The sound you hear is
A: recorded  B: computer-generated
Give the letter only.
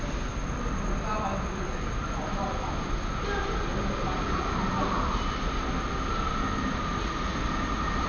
A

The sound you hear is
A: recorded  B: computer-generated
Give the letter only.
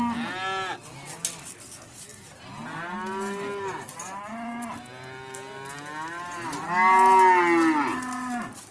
A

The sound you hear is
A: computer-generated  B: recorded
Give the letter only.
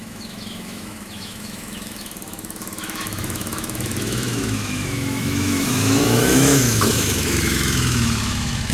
A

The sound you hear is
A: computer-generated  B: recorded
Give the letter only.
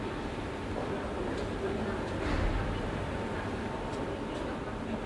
B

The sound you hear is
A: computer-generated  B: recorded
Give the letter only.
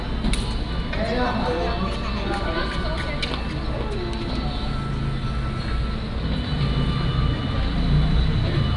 B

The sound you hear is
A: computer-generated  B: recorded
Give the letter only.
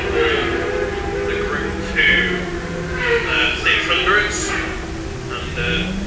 B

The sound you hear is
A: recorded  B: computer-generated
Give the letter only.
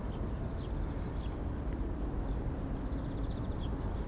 A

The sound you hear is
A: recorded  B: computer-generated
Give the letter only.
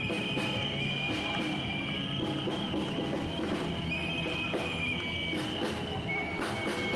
A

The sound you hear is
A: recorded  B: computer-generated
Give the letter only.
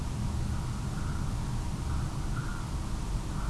A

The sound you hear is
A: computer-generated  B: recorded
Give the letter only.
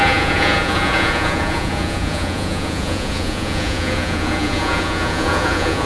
A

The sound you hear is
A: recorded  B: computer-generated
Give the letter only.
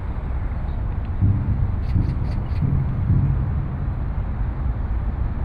A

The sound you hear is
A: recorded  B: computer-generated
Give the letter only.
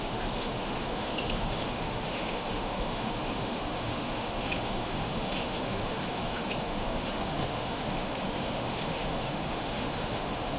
B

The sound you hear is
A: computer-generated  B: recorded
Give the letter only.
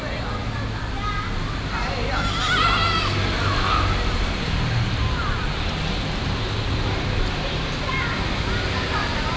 B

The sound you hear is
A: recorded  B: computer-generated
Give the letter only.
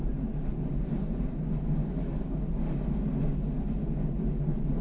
A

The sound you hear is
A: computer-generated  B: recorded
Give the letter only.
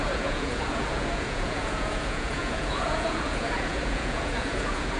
A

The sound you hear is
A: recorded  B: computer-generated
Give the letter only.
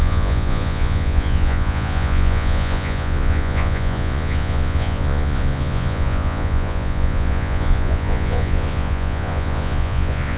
B